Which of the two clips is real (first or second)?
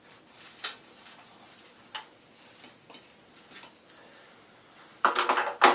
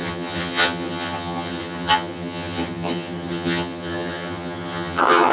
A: first